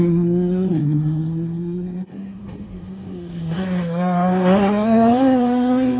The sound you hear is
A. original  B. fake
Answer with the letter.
B